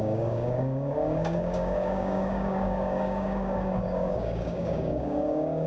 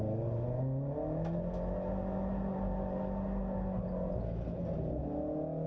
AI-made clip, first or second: first